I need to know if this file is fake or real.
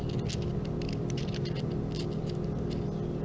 real